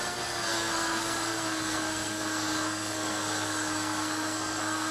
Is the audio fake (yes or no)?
yes